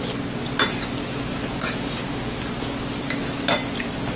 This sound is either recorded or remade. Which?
recorded